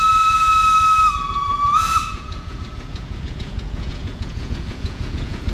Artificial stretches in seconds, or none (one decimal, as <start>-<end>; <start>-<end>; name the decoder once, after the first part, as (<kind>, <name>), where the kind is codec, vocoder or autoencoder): 2.1-5.5 (vocoder, Vocos)